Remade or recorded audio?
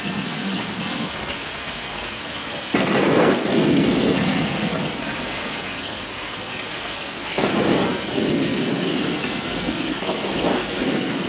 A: remade